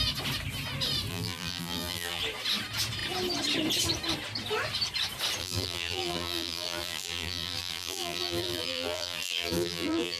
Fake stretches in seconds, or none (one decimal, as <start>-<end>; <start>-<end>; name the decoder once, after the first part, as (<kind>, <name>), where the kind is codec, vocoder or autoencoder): 1.1-2.2 (vocoder, BigVGAN v2); 5.4-10.2